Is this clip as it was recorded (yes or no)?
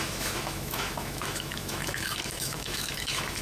no